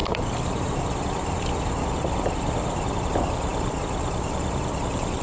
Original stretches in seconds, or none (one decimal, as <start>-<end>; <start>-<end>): 3.1-3.5; 4.8-5.2